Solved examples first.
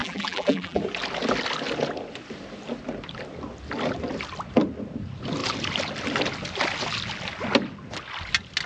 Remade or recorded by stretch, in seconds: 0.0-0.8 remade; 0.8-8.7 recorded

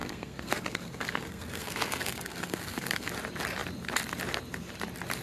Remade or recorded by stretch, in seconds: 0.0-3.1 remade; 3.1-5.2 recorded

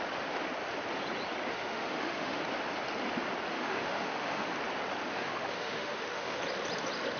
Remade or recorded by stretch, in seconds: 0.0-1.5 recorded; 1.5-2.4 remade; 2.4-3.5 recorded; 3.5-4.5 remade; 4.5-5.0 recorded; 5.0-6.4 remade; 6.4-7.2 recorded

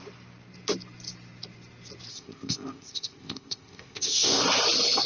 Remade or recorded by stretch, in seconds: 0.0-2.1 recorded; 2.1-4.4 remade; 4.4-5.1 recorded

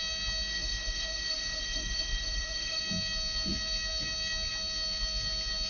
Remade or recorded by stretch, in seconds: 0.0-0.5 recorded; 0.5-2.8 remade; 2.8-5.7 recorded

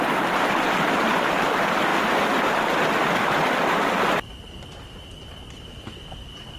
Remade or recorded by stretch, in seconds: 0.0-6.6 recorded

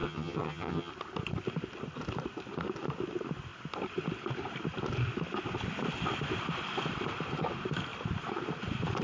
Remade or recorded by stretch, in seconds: 0.0-0.9 remade; 0.9-9.0 recorded

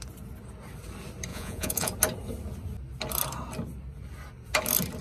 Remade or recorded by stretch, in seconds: 0.0-1.3 recorded; 1.3-1.9 remade; 1.9-5.0 recorded